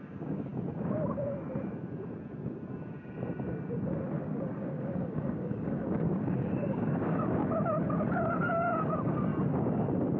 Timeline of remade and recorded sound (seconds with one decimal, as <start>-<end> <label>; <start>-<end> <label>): 0.0-0.5 remade; 0.5-4.4 recorded; 4.4-7.4 remade; 7.4-8.0 recorded; 8.0-9.3 remade; 9.3-10.2 recorded